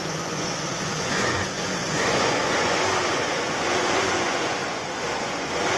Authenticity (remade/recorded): remade